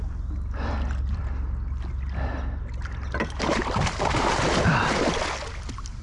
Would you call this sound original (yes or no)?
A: yes